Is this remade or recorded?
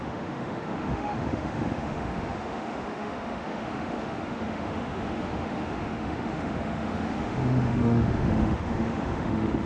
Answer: remade